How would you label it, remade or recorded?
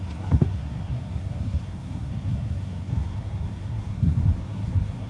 remade